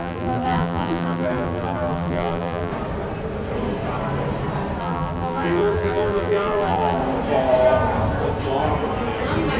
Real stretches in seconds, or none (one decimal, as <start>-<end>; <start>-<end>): 2.7-4.8; 7.0-9.6